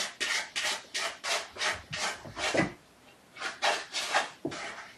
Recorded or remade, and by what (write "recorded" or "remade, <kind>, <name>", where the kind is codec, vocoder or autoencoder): recorded